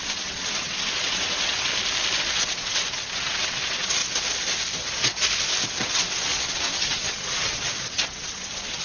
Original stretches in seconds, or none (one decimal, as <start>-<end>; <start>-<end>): 1.7-2.2; 4.0-5.8